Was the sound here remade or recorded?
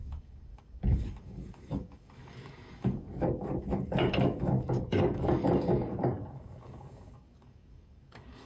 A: remade